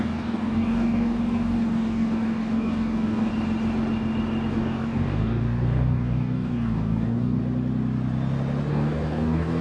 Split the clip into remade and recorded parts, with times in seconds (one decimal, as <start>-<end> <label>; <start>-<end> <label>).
0.0-3.3 remade; 3.3-4.5 recorded; 4.5-7.4 remade; 7.4-8.7 recorded; 8.7-9.6 remade

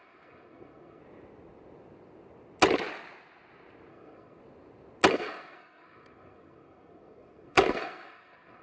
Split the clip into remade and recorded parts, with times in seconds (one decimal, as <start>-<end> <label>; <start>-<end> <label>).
0.0-1.0 remade; 1.0-3.9 recorded; 3.9-4.4 remade; 4.4-5.1 recorded; 5.1-8.6 remade

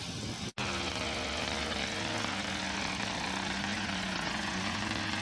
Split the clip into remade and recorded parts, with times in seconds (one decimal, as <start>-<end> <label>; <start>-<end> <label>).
0.0-3.7 recorded; 3.7-4.8 remade; 4.8-5.2 recorded

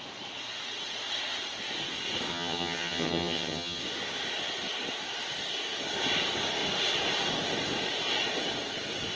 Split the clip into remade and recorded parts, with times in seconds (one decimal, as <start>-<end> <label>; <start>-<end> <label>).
0.0-2.3 recorded; 2.3-3.8 remade; 3.8-9.2 recorded

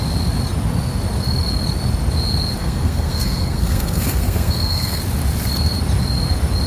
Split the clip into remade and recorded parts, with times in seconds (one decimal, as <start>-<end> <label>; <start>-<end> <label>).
0.0-2.6 recorded; 2.6-5.0 remade; 5.0-6.7 recorded